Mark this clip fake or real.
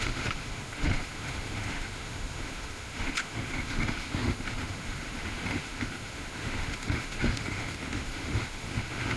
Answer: fake